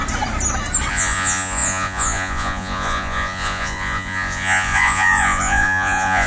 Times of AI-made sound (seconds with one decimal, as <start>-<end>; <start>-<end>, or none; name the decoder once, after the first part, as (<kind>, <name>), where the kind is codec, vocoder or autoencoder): 0.9-6.3 (vocoder, Vocos)